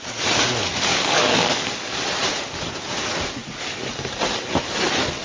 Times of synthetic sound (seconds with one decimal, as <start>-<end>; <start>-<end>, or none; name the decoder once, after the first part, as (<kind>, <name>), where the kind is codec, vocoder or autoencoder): 0.9-2.0 (codec, DAC)